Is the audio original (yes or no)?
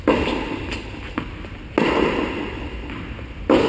yes